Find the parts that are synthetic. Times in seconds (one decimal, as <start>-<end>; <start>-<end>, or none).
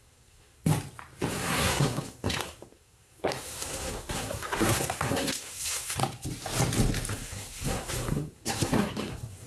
0.0-0.7; 1.3-6.0; 7.1-9.5